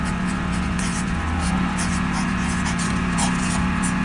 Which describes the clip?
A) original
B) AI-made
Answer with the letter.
B